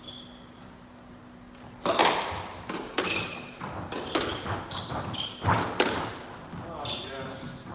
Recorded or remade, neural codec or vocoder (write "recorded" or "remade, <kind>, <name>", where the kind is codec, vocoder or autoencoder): recorded